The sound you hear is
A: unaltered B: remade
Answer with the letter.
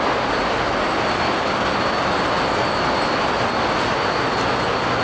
A